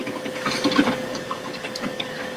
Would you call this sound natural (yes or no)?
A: no